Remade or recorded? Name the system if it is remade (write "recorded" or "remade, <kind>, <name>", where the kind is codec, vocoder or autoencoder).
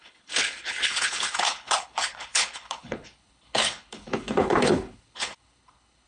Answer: remade, codec, HILCodec